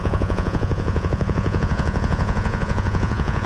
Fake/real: fake